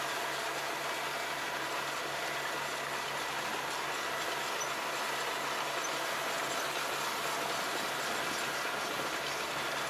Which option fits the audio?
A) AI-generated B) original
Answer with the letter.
B